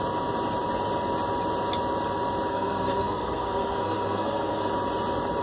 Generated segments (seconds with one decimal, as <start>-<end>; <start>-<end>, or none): 2.5-4.7